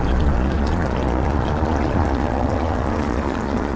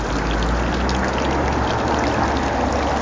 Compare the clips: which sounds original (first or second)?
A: second